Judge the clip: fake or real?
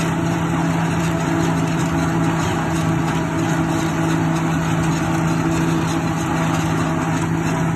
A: real